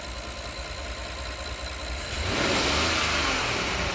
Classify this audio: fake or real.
real